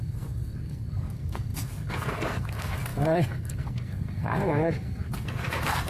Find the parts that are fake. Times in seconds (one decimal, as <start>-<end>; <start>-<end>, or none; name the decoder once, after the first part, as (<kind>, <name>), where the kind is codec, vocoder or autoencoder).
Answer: 0.0-5.9 (codec, SNAC)